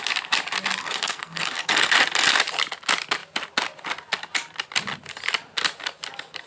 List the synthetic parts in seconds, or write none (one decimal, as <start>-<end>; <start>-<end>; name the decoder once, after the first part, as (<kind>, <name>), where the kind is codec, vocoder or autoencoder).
0.8-1.9 (codec, SNAC)